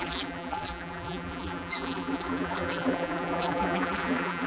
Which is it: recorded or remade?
remade